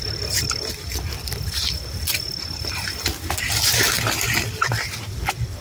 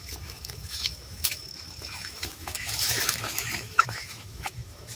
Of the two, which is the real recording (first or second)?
first